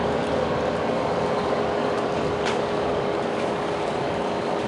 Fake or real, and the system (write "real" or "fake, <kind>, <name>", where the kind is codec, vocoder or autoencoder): fake, codec, DAC